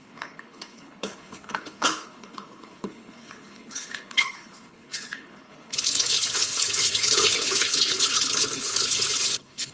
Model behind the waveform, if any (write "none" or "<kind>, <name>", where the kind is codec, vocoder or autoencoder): codec, HILCodec